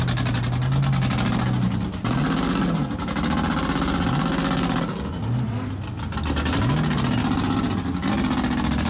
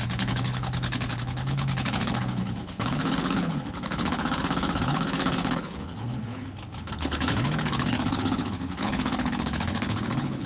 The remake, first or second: second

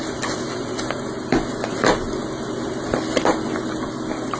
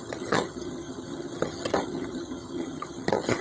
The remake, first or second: second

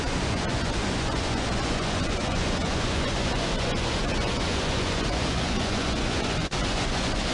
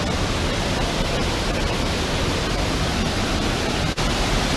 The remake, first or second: first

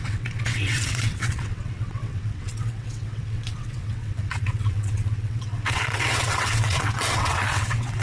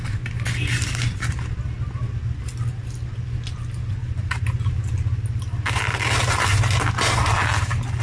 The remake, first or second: first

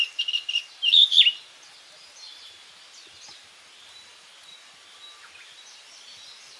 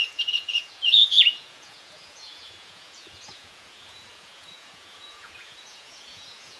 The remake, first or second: second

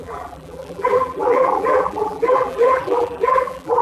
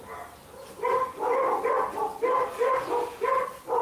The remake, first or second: first